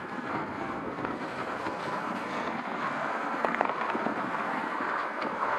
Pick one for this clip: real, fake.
fake